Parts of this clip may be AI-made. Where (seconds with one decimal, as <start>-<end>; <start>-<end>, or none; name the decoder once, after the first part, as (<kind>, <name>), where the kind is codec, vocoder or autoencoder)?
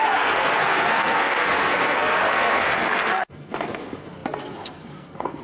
0.0-5.4 (codec, SNAC)